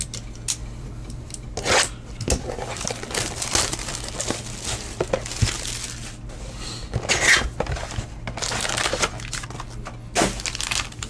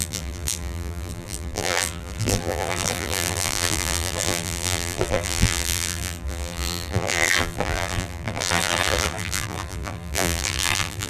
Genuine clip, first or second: first